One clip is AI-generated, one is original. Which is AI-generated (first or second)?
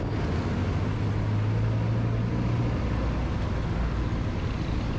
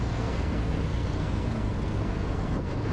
second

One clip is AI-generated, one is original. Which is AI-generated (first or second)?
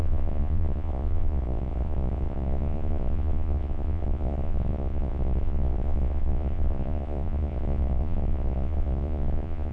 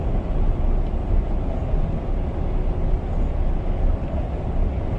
first